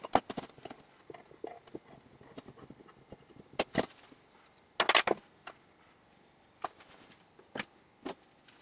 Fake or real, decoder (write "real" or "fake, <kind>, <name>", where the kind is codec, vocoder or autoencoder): real